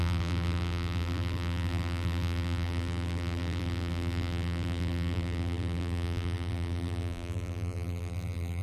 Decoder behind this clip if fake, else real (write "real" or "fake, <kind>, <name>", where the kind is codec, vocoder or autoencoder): fake, vocoder, BigVGAN v2